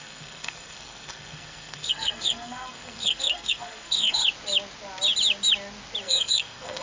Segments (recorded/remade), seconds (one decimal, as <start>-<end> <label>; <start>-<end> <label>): 0.0-4.2 remade; 4.2-6.0 recorded; 6.0-6.8 remade

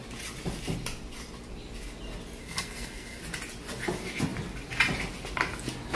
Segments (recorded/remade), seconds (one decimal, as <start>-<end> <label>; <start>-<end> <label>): 0.0-2.4 recorded; 2.4-3.2 remade; 3.2-6.0 recorded

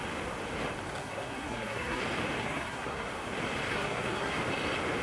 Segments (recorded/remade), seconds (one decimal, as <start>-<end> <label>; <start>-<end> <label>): 0.0-1.0 recorded; 1.0-2.0 remade; 2.0-2.4 recorded; 2.4-3.1 remade; 3.1-3.7 recorded; 3.7-4.4 remade; 4.4-5.0 recorded

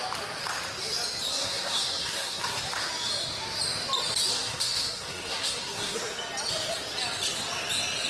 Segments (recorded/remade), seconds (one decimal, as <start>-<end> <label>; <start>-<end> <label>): 0.0-1.3 recorded; 1.3-2.6 remade; 2.6-4.3 recorded; 4.3-6.0 remade; 6.0-8.1 recorded

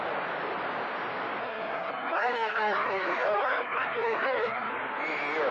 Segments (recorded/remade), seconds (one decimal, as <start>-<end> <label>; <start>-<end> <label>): 0.0-1.4 recorded; 1.4-4.7 remade; 4.7-5.5 recorded

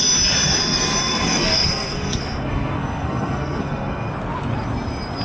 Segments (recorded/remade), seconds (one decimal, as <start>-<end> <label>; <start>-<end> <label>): 0.0-1.0 recorded; 1.0-4.1 remade; 4.1-5.2 recorded

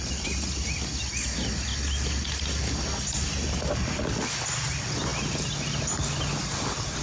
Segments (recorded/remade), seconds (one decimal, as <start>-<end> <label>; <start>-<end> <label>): 0.0-7.0 recorded

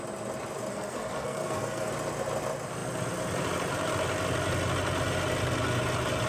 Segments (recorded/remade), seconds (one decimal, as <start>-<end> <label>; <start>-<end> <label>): 0.0-0.7 recorded; 0.7-1.9 remade; 1.9-6.3 recorded